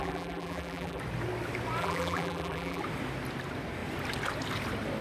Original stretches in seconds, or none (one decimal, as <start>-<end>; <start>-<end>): 1.0-1.8; 2.8-5.0